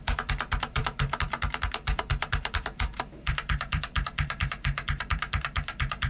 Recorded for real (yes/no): no